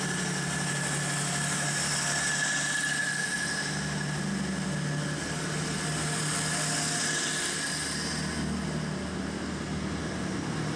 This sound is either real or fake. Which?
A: real